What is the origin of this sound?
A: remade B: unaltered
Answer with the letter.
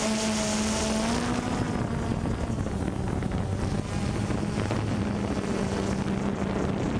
B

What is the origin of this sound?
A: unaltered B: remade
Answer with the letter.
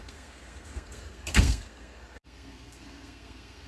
B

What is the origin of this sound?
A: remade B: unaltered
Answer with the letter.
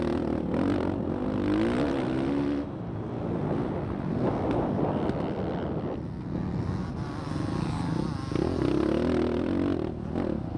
B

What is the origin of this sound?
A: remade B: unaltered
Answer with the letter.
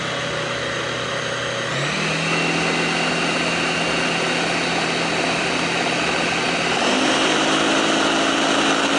B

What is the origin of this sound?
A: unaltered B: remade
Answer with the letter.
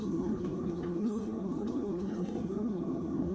B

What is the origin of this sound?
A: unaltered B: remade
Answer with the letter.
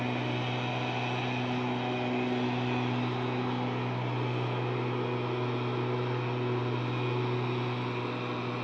A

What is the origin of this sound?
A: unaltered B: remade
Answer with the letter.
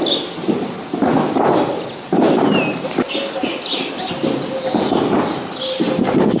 A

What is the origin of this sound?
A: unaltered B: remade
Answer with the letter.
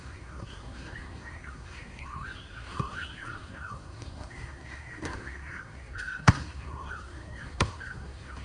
B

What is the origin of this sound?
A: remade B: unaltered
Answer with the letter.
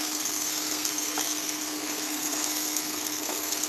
A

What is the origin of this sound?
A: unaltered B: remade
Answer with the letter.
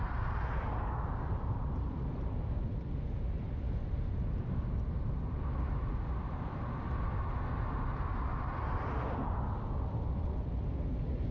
A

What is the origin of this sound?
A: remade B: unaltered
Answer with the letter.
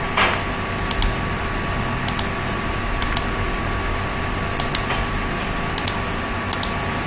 B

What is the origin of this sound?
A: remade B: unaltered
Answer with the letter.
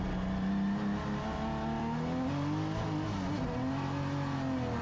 B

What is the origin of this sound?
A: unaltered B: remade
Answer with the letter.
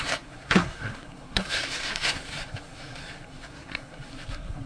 B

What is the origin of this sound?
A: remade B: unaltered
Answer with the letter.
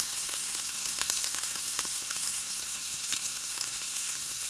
A